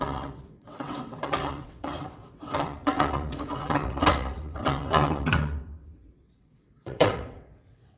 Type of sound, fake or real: fake